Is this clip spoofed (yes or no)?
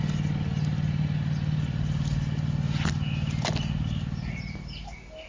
no